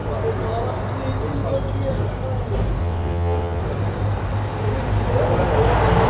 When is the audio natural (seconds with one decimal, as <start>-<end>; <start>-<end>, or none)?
0.0-2.8; 3.6-6.1